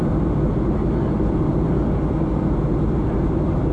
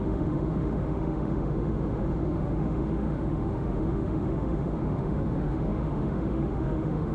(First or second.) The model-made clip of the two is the second